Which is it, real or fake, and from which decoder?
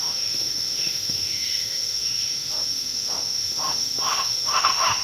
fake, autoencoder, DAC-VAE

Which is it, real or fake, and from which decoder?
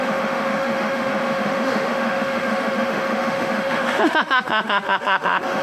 fake, autoencoder, DAC-VAE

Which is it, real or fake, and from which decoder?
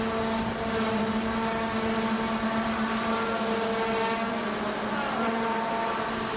real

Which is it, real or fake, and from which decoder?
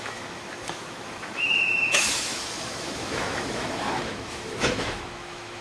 fake, autoencoder, DAC-VAE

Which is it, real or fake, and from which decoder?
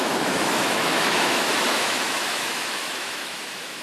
fake, autoencoder, DAC-VAE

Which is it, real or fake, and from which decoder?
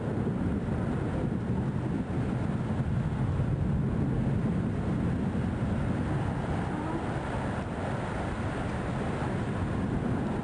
real